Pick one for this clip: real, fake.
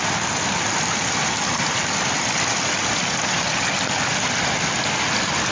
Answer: real